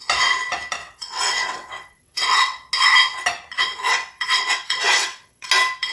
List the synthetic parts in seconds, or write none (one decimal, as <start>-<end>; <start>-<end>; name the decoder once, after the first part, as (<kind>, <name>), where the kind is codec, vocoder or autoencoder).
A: 0.8-2.7 (vocoder, WaveNeXt); 3.9-5.5